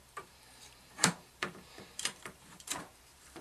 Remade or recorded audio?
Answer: remade